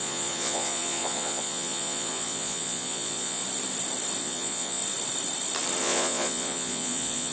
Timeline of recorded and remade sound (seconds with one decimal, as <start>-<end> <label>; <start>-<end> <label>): 0.0-3.4 remade; 3.4-4.2 recorded; 4.2-4.8 remade; 4.8-5.8 recorded; 5.8-7.3 remade